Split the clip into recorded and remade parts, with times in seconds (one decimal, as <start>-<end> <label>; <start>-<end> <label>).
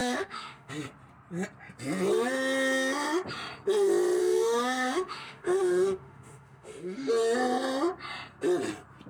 0.0-0.7 remade; 0.7-4.2 recorded; 4.2-7.1 remade; 7.1-9.1 recorded